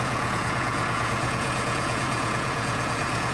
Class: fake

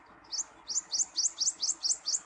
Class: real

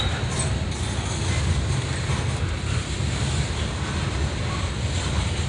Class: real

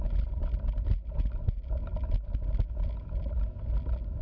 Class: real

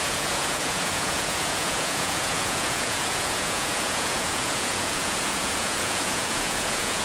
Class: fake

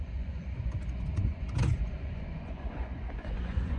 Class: fake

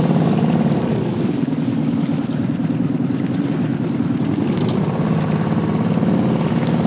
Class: real